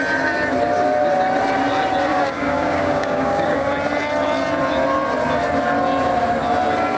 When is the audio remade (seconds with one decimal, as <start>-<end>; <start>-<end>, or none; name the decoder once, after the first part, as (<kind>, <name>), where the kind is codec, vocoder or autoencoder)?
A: 2.1-3.7 (codec, DAC)